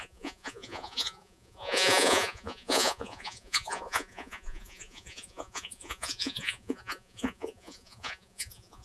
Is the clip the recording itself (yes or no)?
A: no